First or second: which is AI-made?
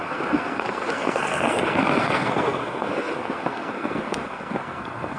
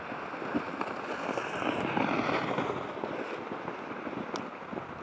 first